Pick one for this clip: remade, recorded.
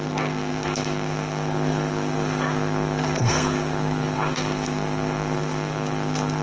remade